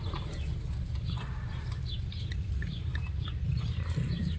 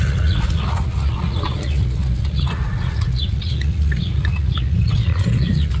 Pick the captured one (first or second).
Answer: first